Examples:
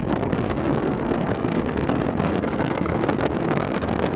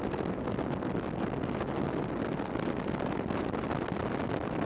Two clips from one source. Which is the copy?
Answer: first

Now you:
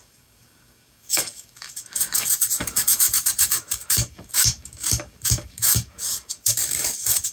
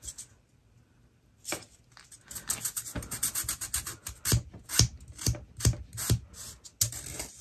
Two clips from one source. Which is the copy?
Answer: first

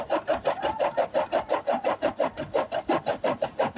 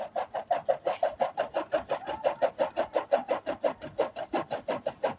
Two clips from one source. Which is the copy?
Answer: second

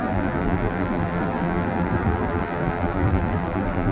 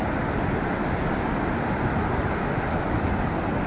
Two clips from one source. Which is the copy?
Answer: first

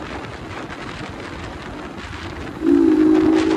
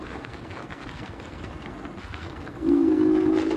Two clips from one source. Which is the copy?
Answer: second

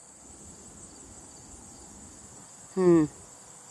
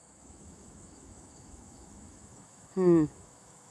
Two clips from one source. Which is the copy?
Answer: second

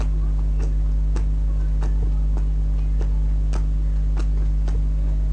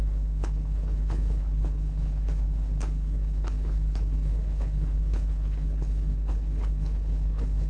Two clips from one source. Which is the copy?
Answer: second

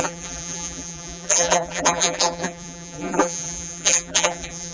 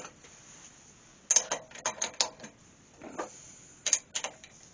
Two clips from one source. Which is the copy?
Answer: first